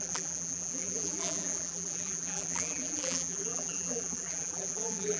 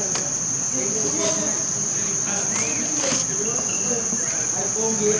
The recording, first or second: second